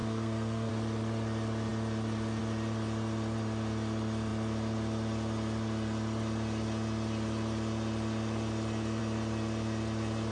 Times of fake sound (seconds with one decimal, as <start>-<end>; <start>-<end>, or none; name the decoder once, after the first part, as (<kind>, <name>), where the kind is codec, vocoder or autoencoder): 0.0-0.7 (codec, SNAC)